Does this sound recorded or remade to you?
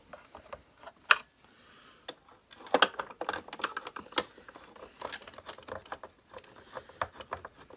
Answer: recorded